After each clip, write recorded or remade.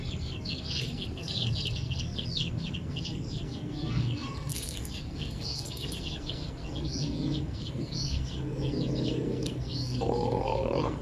remade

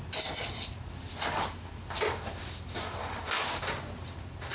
recorded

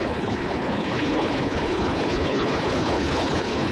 remade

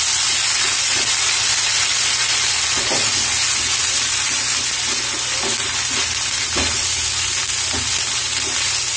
recorded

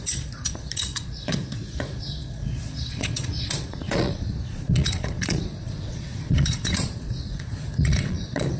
remade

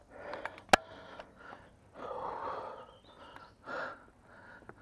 recorded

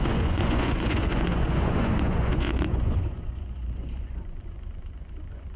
remade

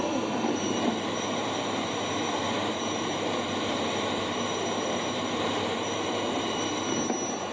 remade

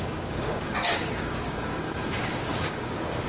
remade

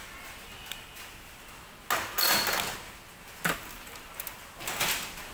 recorded